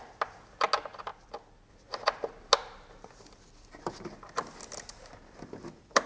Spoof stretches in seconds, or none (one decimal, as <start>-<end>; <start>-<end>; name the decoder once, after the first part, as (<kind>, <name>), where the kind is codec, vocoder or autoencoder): none